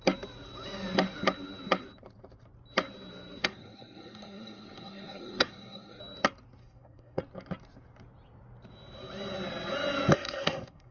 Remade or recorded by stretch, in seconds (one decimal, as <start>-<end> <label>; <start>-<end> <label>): 0.0-3.4 recorded; 3.4-6.0 remade; 6.0-6.6 recorded; 6.6-7.2 remade; 7.2-10.1 recorded; 10.1-10.9 remade